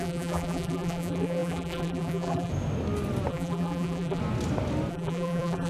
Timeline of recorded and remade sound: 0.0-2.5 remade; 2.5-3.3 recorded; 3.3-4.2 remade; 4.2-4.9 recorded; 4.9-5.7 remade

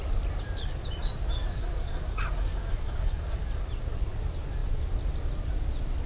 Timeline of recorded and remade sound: 0.0-1.4 recorded; 1.4-3.5 remade; 3.5-6.1 recorded

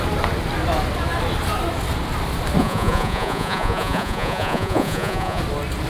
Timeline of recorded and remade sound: 0.0-2.6 recorded; 2.6-5.4 remade; 5.4-5.9 recorded

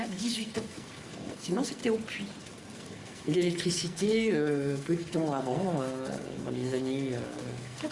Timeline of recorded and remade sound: 0.0-1.8 remade; 1.8-2.4 recorded; 2.4-7.9 remade

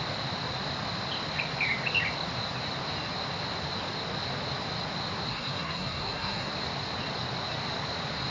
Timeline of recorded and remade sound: 0.0-5.3 recorded; 5.3-6.5 remade; 6.5-8.3 recorded